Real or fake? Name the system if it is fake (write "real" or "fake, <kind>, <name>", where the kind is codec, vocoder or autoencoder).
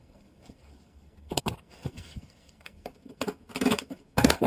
fake, codec, SNAC